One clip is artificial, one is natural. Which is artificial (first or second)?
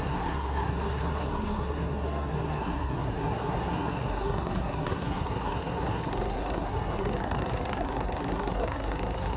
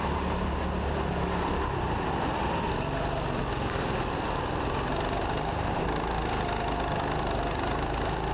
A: first